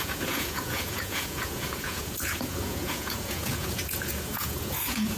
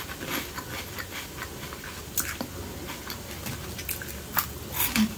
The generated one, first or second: first